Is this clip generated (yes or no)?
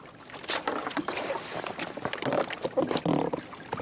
no